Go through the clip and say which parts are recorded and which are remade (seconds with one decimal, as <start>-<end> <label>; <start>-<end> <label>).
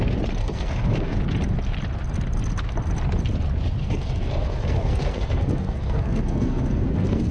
0.0-0.4 recorded; 0.4-1.2 remade; 1.2-3.8 recorded; 3.8-7.3 remade